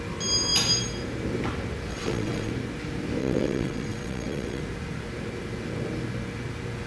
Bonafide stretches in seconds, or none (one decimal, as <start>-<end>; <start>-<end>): 0.0-1.9; 2.5-3.2; 4.6-6.9